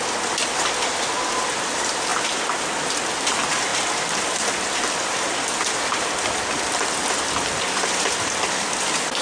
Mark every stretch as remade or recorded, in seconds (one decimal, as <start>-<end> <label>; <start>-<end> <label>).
0.0-9.2 recorded